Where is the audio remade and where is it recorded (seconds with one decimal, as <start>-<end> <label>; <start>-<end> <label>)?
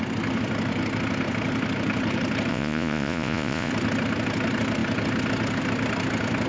0.0-2.5 recorded; 2.5-3.7 remade; 3.7-6.5 recorded